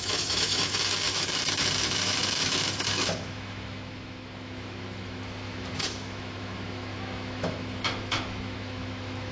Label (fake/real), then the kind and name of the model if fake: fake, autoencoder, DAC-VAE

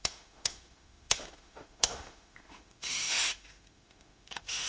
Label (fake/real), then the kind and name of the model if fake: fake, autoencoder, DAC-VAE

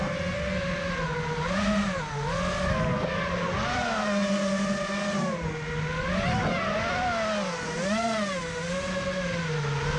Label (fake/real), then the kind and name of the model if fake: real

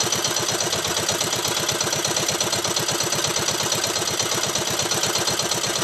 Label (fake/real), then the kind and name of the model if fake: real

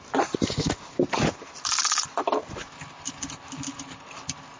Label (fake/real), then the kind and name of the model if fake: real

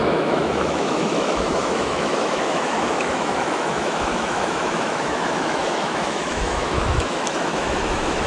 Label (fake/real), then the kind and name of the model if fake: fake, autoencoder, DAC-VAE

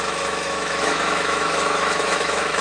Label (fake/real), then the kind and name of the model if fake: fake, autoencoder, DAC-VAE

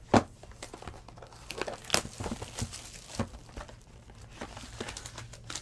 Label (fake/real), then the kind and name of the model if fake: real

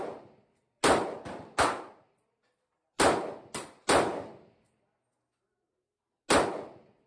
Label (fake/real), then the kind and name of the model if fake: real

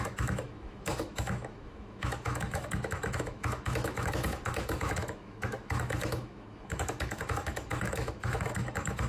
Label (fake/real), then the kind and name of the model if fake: fake, autoencoder, DAC-VAE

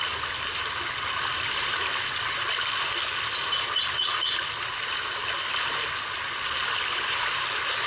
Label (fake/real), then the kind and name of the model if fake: real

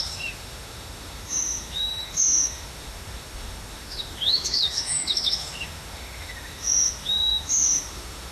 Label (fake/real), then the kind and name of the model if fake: fake, autoencoder, DAC-VAE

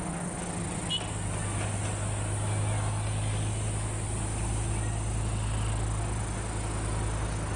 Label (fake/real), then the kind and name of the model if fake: real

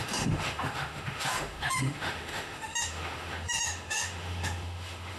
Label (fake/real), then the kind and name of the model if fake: fake, autoencoder, DAC-VAE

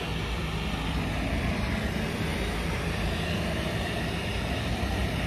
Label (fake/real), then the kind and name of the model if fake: real